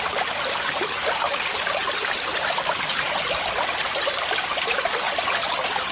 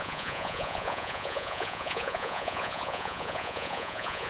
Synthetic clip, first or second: second